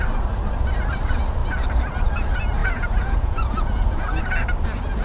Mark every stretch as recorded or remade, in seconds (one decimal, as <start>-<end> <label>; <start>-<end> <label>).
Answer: 0.0-2.6 recorded; 2.6-4.2 remade; 4.2-5.0 recorded